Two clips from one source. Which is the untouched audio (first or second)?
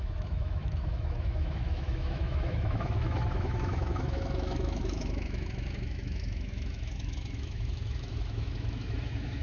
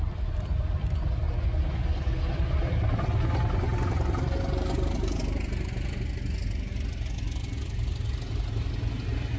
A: second